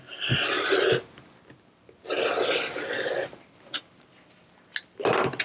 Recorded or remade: recorded